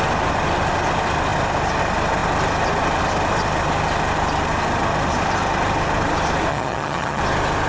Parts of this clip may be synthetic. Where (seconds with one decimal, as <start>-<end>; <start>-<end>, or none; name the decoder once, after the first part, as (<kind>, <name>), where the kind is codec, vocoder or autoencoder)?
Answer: 6.5-7.2 (vocoder, HiFi-GAN)